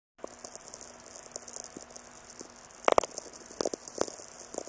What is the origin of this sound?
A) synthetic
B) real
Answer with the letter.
B